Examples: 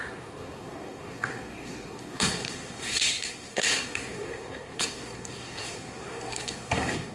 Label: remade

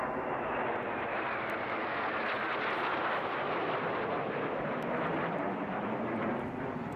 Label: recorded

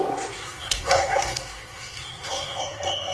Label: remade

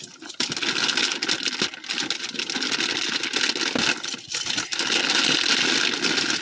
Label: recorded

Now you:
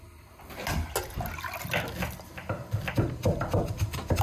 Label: recorded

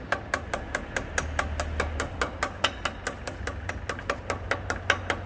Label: recorded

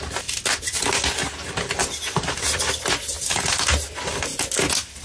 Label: recorded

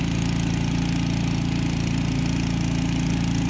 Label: recorded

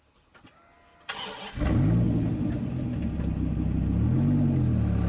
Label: recorded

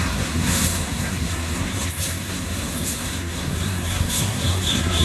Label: remade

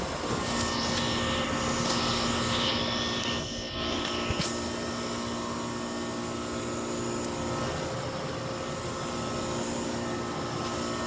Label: recorded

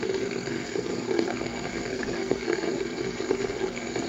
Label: remade